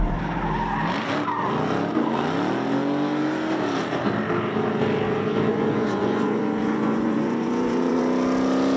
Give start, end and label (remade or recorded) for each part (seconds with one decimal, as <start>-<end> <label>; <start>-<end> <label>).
0.0-5.5 recorded; 5.5-8.0 remade; 8.0-8.8 recorded